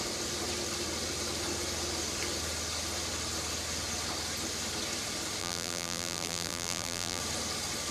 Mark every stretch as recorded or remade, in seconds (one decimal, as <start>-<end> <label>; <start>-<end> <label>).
0.0-5.4 recorded; 5.4-7.2 remade; 7.2-7.9 recorded

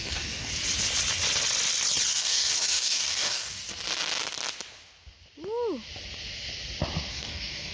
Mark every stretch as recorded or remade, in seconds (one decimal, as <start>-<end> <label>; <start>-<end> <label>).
0.0-0.5 remade; 0.5-2.1 recorded; 2.1-3.6 remade; 3.6-7.1 recorded; 7.1-7.7 remade

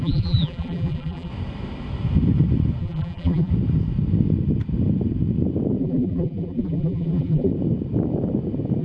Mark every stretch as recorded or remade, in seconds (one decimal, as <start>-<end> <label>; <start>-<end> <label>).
0.0-1.3 remade; 1.3-2.8 recorded; 2.8-3.5 remade; 3.5-5.8 recorded; 5.8-7.5 remade; 7.5-8.8 recorded

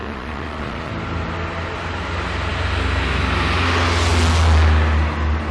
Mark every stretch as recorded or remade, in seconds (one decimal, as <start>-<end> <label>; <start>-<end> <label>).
0.0-0.9 remade; 0.9-5.5 recorded

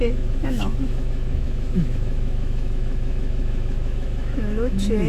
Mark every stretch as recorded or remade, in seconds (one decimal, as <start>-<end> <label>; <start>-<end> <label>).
0.0-5.1 remade

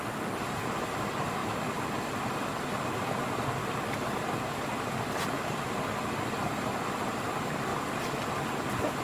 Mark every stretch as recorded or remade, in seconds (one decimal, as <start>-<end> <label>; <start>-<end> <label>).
0.0-9.0 recorded